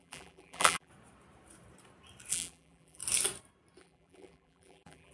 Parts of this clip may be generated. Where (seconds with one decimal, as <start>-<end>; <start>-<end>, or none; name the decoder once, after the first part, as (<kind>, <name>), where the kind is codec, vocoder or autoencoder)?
0.0-0.9 (vocoder, BigVGAN v2); 2.3-3.0; 3.8-5.1